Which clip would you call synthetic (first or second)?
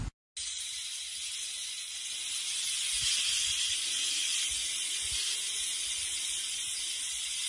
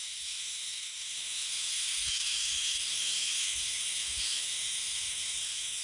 second